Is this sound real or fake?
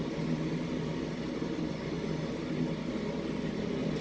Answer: real